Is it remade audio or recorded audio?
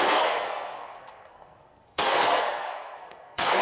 remade